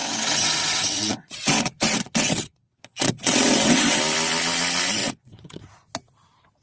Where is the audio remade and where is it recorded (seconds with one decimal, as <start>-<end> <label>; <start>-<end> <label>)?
0.0-4.0 remade; 4.0-5.0 recorded; 5.0-5.6 remade; 5.6-6.6 recorded

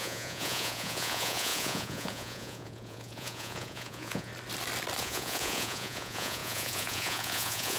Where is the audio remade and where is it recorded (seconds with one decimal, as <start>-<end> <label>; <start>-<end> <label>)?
0.0-4.3 remade; 4.3-5.0 recorded; 5.0-7.8 remade

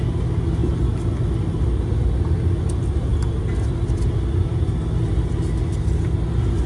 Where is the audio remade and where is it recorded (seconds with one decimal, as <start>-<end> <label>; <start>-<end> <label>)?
0.0-6.7 recorded

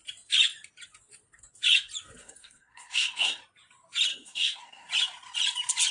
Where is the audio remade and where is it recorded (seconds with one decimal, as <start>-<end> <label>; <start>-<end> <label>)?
0.0-2.2 recorded; 2.2-3.4 remade; 3.4-4.1 recorded; 4.1-4.9 remade; 4.9-5.9 recorded

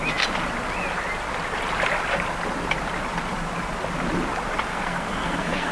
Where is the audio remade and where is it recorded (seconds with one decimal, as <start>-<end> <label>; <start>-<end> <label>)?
0.0-4.7 recorded; 4.7-5.7 remade